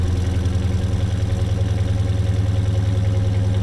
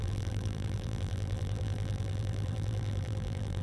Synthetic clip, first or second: second